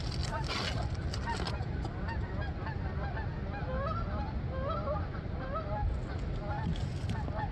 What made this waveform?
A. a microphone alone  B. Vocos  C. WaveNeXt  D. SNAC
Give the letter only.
A